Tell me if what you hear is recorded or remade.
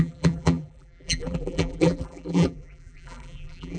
remade